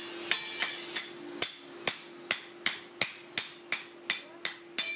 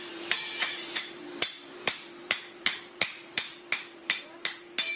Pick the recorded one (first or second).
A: first